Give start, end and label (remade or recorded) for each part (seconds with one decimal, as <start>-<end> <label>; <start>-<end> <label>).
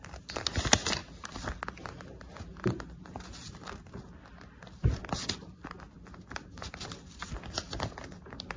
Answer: 0.0-8.6 recorded